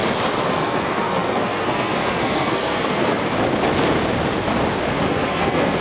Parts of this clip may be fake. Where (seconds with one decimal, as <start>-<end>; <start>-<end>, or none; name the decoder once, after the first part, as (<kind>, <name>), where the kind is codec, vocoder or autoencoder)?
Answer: 0.5-3.2 (codec, SNAC); 5.1-5.8